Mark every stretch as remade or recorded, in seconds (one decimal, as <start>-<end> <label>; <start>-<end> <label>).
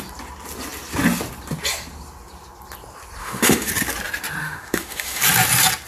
0.0-3.2 recorded; 3.2-3.7 remade; 3.7-4.4 recorded; 4.4-5.2 remade; 5.2-5.9 recorded